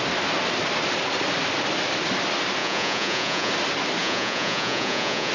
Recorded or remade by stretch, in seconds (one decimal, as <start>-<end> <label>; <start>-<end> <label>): 0.0-2.6 recorded; 2.6-3.5 remade; 3.5-4.0 recorded; 4.0-5.3 remade